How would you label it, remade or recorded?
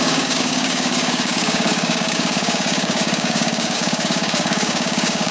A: remade